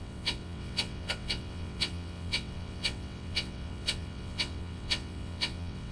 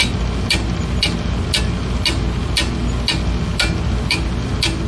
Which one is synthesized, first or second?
first